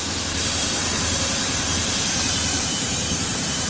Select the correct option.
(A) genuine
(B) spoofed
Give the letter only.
B